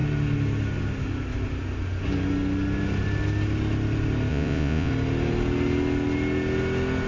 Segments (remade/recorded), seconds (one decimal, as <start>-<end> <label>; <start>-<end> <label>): 0.0-4.3 recorded; 4.3-4.9 remade; 4.9-7.1 recorded